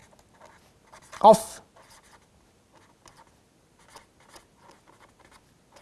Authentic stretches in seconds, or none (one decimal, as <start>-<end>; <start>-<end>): 0.0-5.8

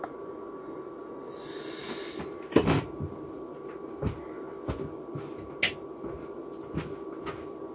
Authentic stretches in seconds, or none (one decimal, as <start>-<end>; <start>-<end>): 0.0-7.7

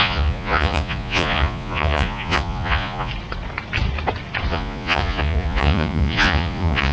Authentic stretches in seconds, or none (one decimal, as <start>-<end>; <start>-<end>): 3.1-4.5

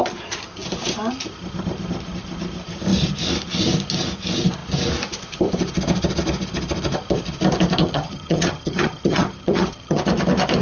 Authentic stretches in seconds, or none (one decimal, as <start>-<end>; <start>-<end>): 0.0-7.8; 10.0-10.6

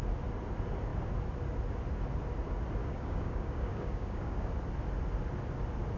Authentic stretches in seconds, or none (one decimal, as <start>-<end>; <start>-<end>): 0.0-2.8; 4.5-6.0